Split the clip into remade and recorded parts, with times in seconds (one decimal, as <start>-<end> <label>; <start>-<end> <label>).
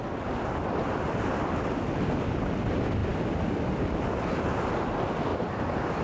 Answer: 0.0-5.3 recorded; 5.3-6.0 remade